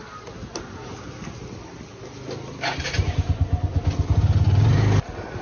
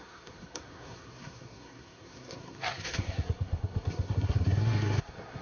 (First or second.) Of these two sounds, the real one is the first